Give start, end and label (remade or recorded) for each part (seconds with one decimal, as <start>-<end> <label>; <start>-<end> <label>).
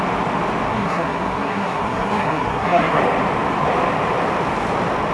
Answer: 0.0-0.7 recorded; 0.7-3.0 remade; 3.0-5.1 recorded